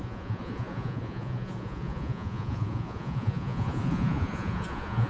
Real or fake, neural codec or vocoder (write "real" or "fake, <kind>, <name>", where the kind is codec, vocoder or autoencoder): fake, vocoder, Vocos